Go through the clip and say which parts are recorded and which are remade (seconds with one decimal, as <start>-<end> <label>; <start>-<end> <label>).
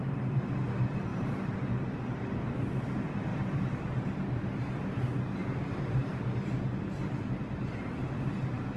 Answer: 0.0-1.1 recorded; 1.1-1.7 remade; 1.7-3.3 recorded; 3.3-3.8 remade; 3.8-5.4 recorded; 5.4-6.5 remade; 6.5-8.8 recorded